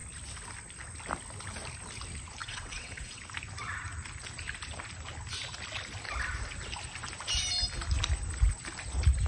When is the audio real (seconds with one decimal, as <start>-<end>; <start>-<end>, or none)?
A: 0.0-2.4; 3.2-9.3